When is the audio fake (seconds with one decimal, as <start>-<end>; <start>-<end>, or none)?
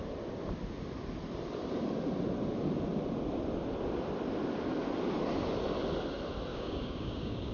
6.5-7.5